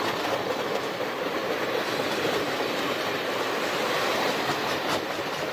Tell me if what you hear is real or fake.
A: real